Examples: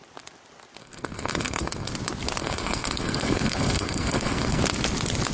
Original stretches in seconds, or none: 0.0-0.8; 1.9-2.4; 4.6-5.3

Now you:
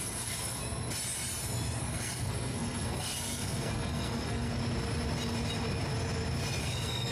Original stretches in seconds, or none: 0.6-1.8; 4.6-6.6

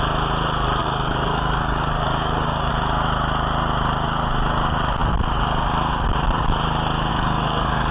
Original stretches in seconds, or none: 0.0-0.8; 2.7-7.1

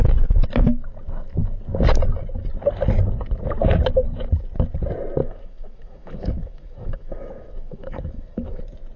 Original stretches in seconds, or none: 0.0-5.2; 8.6-9.0

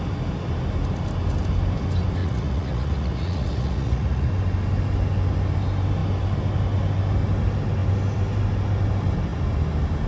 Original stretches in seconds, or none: 0.0-2.2; 4.3-10.1

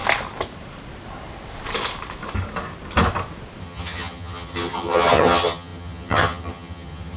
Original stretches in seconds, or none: 0.0-3.6

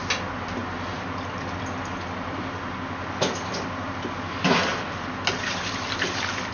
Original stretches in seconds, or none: 0.0-6.5